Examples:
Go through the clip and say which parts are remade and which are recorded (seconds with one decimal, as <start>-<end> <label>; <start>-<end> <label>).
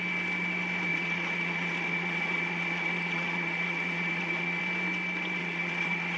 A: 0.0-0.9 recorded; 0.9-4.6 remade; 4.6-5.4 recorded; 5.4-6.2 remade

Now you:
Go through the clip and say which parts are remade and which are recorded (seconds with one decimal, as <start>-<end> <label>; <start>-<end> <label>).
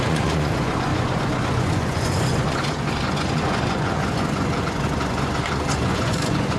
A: 0.0-6.6 remade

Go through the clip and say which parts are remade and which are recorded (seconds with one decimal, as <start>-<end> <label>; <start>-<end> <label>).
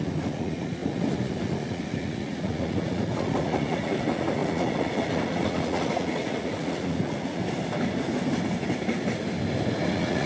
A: 0.0-7.4 remade; 7.4-9.9 recorded; 9.9-10.3 remade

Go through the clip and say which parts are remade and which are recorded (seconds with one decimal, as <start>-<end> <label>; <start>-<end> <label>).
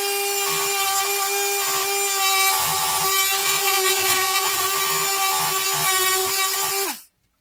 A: 0.0-3.4 recorded; 3.4-4.5 remade; 4.5-7.4 recorded